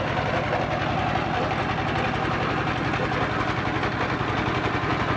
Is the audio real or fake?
real